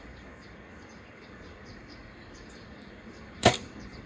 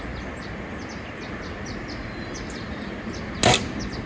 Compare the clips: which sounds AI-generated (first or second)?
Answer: first